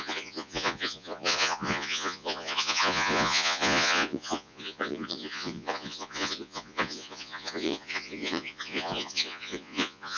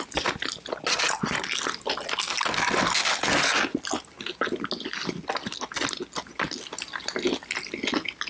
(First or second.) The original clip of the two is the second